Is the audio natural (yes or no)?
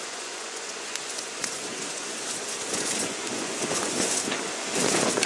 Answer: no